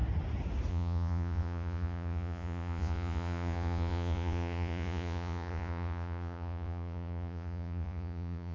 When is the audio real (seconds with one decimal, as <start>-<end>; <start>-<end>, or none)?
0.0-0.7